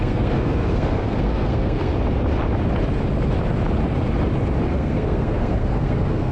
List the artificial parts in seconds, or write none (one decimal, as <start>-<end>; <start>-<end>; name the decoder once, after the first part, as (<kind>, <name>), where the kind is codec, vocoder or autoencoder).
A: 0.0-1.9 (codec, SNAC); 4.7-6.3